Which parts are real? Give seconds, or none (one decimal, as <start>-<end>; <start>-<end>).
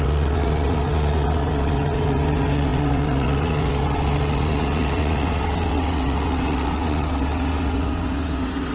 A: none